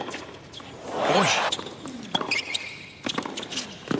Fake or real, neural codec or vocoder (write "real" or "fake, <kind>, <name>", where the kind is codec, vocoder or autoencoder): real